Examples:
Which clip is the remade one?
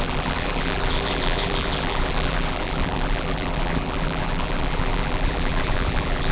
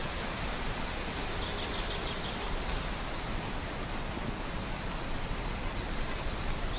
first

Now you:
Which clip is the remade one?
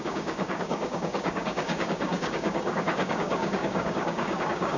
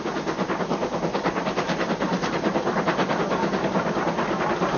first